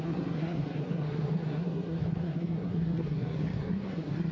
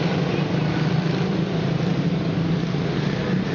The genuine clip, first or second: second